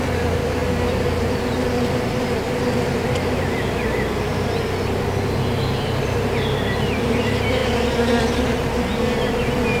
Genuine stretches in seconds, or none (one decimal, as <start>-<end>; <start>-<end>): 0.0-9.8